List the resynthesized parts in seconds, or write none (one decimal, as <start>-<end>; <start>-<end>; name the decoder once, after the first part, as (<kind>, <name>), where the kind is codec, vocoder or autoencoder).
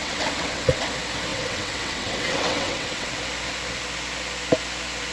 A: 0.0-0.9 (vocoder, WaveNeXt); 1.3-3.1